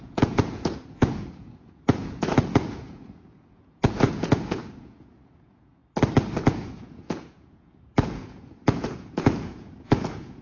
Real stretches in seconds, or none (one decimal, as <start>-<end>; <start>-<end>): 5.8-6.5